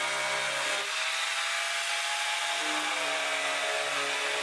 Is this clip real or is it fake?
real